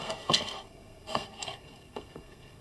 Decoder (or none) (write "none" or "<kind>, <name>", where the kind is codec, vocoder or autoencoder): codec, SNAC